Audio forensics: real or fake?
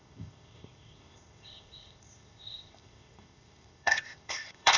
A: fake